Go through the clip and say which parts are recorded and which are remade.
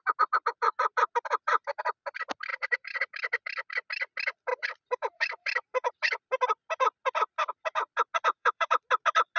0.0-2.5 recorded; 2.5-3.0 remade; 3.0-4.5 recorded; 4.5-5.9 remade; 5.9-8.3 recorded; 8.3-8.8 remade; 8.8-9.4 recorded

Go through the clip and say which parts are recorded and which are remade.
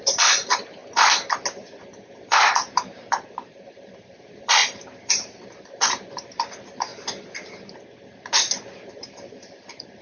0.0-0.8 remade; 0.8-2.1 recorded; 2.1-4.6 remade; 4.6-5.1 recorded; 5.1-6.9 remade; 6.9-8.9 recorded; 8.9-10.0 remade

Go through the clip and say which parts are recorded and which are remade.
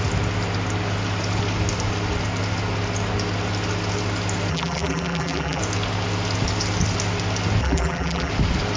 0.0-4.5 recorded; 4.5-5.6 remade; 5.6-7.6 recorded; 7.6-8.3 remade; 8.3-8.8 recorded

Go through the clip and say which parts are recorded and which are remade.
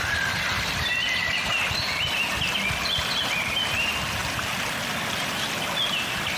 0.0-6.4 recorded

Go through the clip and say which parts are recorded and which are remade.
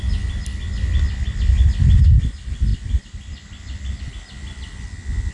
0.0-5.3 recorded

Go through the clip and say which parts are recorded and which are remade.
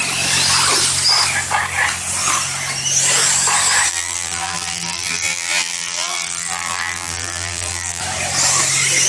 0.0-3.9 recorded; 3.9-8.0 remade; 8.0-9.1 recorded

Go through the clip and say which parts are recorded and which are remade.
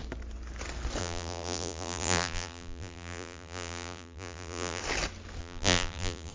0.0-1.0 recorded; 1.0-4.8 remade; 4.8-5.4 recorded; 5.4-6.3 remade